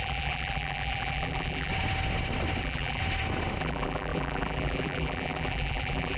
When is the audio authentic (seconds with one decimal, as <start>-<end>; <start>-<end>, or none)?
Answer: 1.7-2.6; 3.0-3.6